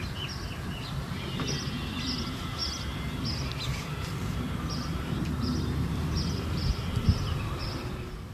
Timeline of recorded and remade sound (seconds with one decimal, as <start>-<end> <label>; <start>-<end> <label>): 0.0-2.6 remade; 2.6-3.7 recorded; 3.7-8.3 remade